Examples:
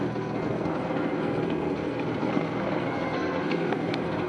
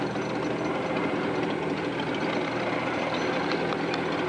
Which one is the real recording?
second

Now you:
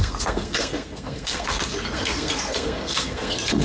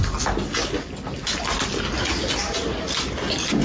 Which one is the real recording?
second